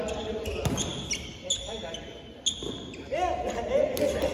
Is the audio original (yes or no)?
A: yes